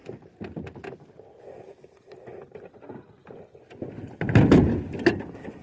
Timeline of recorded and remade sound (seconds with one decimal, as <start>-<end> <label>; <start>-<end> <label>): 0.0-5.6 recorded